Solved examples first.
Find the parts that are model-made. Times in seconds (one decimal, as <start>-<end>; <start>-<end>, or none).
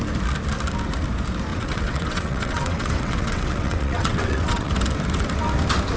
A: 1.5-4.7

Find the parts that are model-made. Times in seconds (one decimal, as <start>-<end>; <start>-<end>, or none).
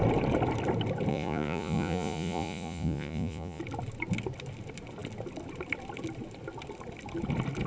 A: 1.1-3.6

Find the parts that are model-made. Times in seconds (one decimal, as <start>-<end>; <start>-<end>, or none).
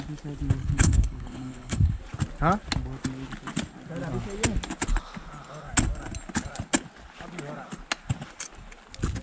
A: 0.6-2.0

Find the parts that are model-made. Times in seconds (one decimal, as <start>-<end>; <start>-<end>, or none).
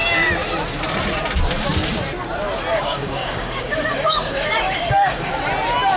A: 2.7-5.3